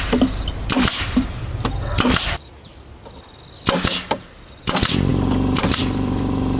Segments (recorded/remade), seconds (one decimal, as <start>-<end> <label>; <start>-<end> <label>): 0.0-2.7 remade; 2.7-4.1 recorded; 4.1-6.6 remade